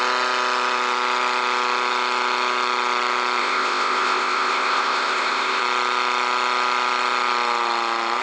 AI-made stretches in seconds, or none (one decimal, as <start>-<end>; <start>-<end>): 3.4-5.6